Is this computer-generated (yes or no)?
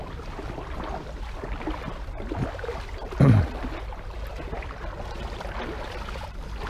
no